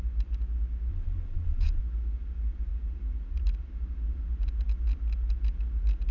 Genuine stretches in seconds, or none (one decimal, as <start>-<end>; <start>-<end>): 0.0-0.9; 1.8-6.1